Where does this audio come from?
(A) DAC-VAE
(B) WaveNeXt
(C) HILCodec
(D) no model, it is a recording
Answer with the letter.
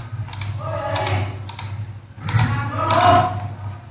D